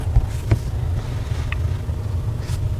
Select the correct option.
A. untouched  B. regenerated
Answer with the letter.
A